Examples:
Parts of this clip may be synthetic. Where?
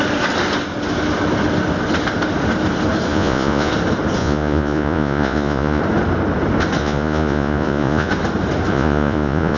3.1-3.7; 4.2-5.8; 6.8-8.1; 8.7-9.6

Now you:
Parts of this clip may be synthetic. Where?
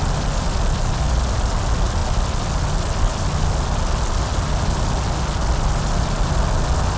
none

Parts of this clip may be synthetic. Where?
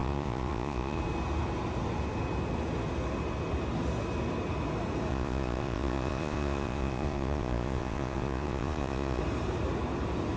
0.0-1.0; 5.1-9.2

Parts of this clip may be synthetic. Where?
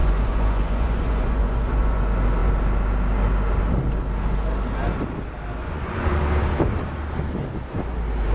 0.0-2.0; 5.6-6.2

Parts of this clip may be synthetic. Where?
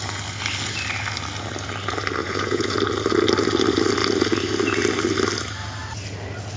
2.2-2.8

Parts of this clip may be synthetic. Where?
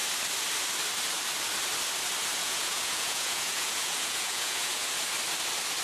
2.4-4.9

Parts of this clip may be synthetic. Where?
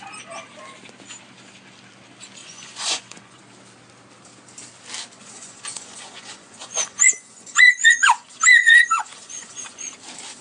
2.4-3.4; 5.2-9.9